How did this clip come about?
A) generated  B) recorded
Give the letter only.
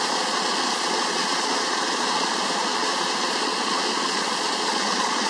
A